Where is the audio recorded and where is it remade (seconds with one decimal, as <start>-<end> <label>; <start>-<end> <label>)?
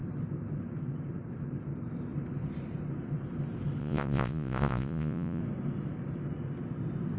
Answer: 0.0-3.8 recorded; 3.8-5.4 remade; 5.4-7.2 recorded